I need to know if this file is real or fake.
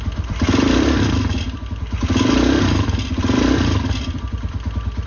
fake